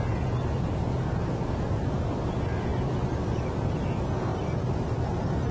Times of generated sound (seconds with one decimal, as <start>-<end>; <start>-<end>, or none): 4.3-5.5